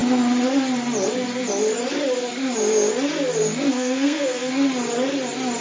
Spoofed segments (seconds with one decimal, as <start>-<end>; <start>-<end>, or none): 3.7-4.5